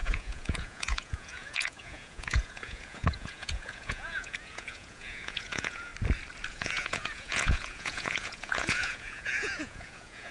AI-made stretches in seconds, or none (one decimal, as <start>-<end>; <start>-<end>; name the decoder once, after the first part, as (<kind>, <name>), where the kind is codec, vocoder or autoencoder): 0.0-5.9 (vocoder, Vocos); 6.5-10.3